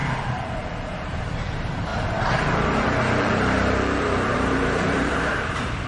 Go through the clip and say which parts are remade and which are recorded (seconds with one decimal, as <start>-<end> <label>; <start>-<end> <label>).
0.0-5.9 remade